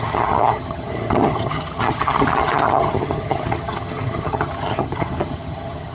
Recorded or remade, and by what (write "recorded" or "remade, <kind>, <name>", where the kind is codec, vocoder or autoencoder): remade, vocoder, HiFi-GAN